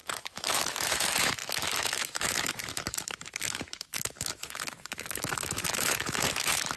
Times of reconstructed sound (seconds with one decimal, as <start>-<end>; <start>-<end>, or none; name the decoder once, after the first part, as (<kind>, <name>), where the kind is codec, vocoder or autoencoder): 0.0-6.8 (autoencoder, DAC-VAE)